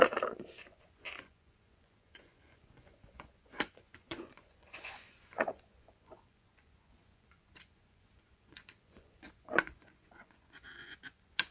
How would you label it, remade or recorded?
remade